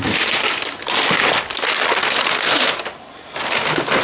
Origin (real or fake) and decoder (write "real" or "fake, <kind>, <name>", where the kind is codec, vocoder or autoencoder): real